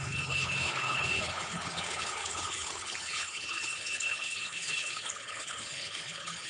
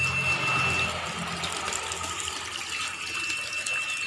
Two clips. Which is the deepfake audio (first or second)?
first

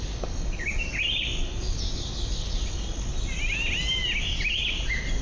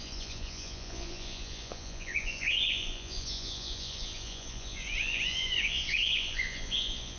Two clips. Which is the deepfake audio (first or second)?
second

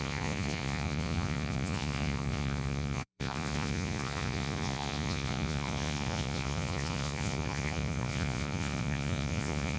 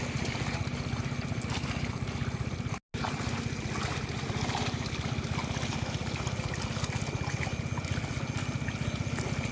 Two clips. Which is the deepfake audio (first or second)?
first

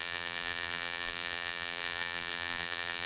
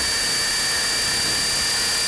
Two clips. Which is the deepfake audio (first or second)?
first